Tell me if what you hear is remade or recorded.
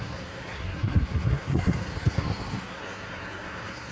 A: remade